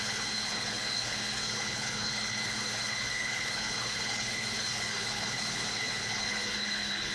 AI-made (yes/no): yes